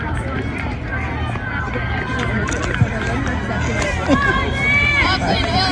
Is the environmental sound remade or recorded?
recorded